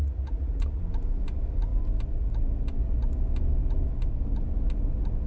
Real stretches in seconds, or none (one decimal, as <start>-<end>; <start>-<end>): 0.8-5.3